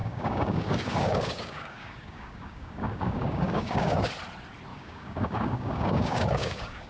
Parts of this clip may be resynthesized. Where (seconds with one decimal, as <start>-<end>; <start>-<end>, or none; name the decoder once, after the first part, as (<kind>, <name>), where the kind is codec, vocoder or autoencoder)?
0.0-4.1 (codec, DAC); 4.7-6.9